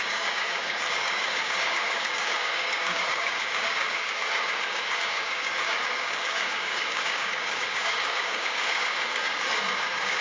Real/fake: fake